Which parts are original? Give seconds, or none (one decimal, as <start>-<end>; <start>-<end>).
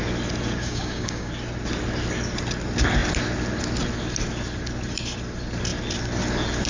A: 0.0-0.6; 1.3-6.7